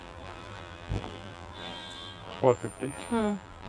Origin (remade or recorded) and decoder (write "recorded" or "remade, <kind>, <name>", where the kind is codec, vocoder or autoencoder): remade, vocoder, BigVGAN v2